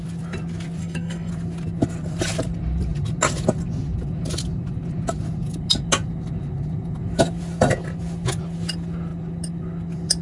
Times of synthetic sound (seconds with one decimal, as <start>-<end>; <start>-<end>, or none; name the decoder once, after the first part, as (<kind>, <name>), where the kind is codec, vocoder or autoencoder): 0.8-1.3 (codec, SNAC)